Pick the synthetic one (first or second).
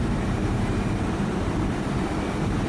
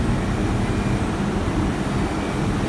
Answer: first